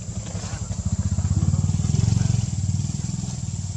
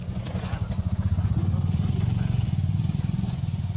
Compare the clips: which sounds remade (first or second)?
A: second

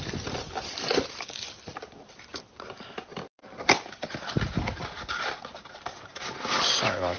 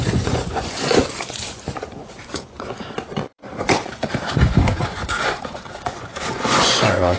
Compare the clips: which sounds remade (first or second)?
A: second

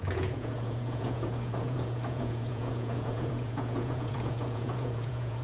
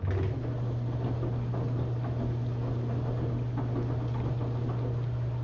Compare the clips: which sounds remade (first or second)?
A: first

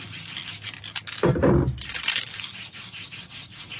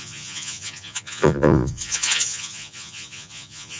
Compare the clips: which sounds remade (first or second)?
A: second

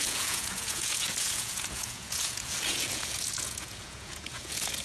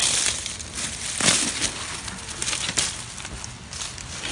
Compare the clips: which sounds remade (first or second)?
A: first